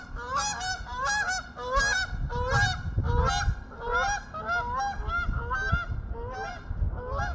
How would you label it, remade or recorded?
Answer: recorded